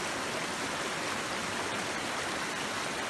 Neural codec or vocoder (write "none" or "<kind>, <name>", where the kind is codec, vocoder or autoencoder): none